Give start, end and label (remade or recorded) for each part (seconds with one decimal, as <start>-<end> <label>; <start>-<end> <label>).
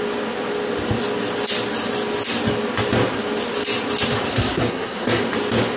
0.0-4.3 recorded; 4.3-5.2 remade; 5.2-5.8 recorded